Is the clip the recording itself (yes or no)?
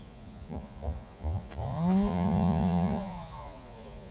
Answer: no